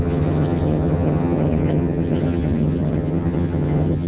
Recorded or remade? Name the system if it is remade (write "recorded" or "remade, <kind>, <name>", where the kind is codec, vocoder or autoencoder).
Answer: remade, vocoder, HiFi-GAN